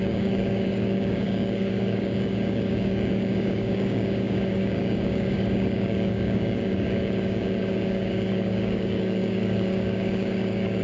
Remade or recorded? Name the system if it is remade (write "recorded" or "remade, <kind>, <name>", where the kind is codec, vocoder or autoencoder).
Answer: remade, codec, DAC